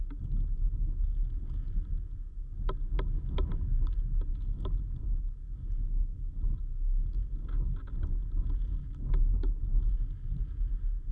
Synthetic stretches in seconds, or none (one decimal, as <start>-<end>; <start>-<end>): none